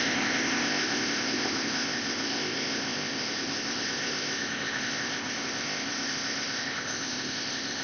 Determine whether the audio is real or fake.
fake